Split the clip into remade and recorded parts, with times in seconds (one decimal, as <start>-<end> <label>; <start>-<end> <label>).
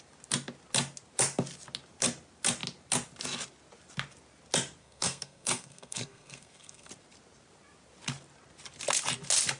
0.0-4.8 recorded; 4.8-6.9 remade; 6.9-9.6 recorded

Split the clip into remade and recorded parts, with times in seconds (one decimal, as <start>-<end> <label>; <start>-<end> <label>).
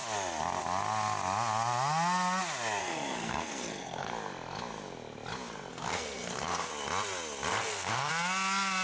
0.0-2.8 recorded; 2.8-4.1 remade; 4.1-5.7 recorded; 5.7-6.7 remade; 6.7-7.5 recorded; 7.5-8.1 remade; 8.1-8.8 recorded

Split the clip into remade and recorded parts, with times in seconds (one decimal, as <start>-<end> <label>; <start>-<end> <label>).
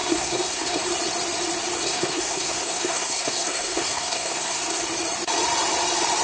0.0-0.8 remade; 0.8-1.8 recorded; 1.8-4.8 remade; 4.8-6.2 recorded